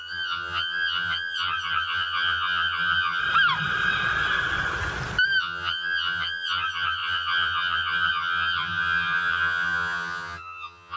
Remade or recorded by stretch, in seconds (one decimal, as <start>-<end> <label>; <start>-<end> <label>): 0.0-3.2 remade; 3.2-5.4 recorded; 5.4-11.0 remade